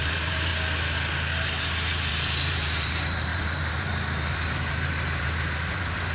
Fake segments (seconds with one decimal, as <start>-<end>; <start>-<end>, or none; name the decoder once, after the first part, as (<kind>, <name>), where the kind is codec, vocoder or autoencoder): 0.0-0.5 (vocoder, BigVGAN v2); 2.1-6.1